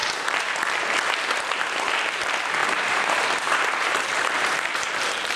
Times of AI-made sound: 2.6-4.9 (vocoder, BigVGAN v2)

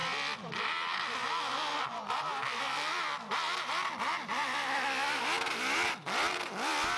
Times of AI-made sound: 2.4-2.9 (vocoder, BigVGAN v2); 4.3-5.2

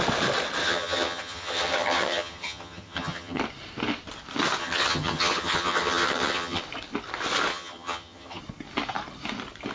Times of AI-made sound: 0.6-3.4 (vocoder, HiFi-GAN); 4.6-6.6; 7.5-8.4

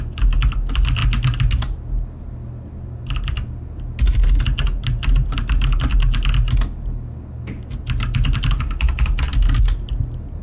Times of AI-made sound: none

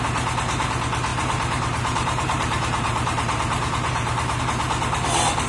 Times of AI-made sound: 1.1-4.4 (vocoder, BigVGAN v2)

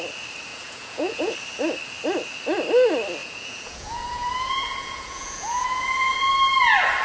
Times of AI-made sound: 0.5-1.3 (vocoder, Vocos); 3.2-6.3